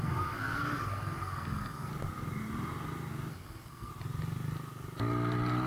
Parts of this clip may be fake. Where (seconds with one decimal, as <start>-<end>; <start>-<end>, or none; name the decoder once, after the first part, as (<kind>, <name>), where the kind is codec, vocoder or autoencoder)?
0.0-1.9 (codec, SNAC); 3.3-3.9